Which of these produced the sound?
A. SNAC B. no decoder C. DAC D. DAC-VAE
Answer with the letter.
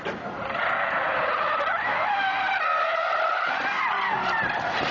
B